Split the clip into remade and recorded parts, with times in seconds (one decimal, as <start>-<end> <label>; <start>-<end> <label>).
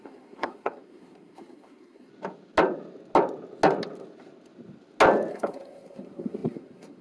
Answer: 0.0-2.1 remade; 2.1-5.3 recorded; 5.3-7.0 remade